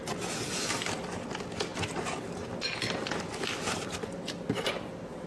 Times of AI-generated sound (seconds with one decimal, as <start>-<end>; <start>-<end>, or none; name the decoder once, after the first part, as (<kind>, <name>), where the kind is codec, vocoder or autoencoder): none